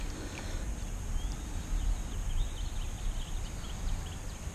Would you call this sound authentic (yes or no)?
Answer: yes